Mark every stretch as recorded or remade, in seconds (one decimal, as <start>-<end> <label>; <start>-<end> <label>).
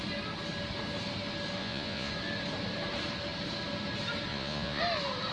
0.0-1.6 recorded; 1.6-2.1 remade; 2.1-4.3 recorded; 4.3-4.8 remade; 4.8-5.3 recorded